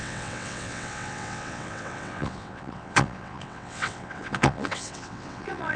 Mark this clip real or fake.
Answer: fake